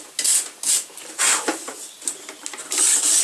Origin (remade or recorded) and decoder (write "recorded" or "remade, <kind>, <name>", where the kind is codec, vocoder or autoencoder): recorded